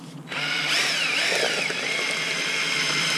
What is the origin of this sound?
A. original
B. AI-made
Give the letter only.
A